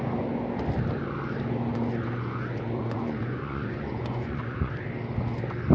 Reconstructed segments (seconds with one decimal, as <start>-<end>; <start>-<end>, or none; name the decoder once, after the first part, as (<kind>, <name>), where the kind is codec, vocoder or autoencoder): 1.7-4.7 (vocoder, Vocos)